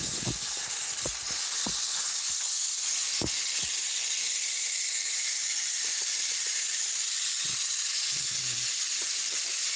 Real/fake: real